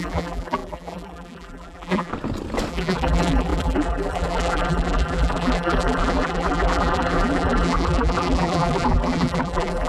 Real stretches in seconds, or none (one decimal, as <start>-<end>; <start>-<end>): 2.1-2.7